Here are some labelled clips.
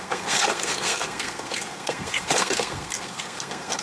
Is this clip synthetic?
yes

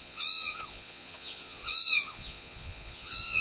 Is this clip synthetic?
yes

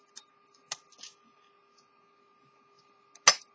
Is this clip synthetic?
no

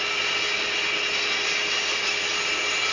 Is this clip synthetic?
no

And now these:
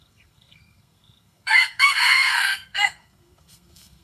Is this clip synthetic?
yes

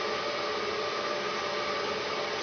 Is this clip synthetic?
no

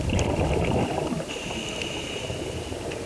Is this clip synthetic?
no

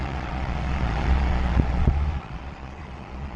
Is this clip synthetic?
yes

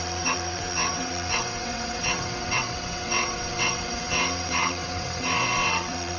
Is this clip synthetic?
yes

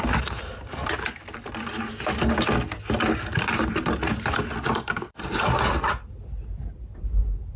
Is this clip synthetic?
no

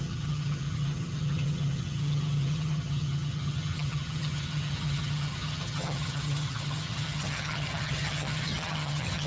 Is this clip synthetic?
yes